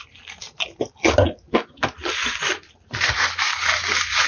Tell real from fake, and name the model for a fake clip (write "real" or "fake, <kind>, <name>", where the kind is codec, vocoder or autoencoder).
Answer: real